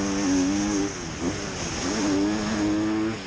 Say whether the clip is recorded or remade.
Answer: recorded